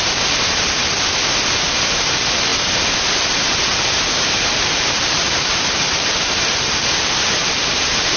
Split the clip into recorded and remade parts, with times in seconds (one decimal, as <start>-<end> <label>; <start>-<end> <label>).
0.0-8.2 remade